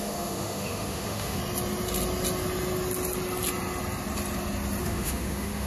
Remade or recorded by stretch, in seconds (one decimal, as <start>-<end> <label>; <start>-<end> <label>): 0.0-1.4 remade; 1.4-4.8 recorded; 4.8-5.7 remade